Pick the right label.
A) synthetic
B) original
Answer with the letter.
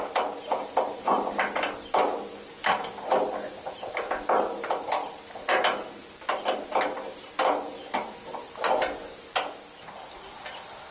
B